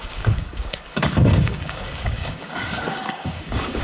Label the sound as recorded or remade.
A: remade